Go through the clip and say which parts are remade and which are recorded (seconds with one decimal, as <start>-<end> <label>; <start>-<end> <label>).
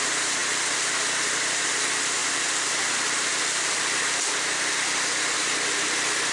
0.0-2.2 recorded; 2.2-4.2 remade; 4.2-6.3 recorded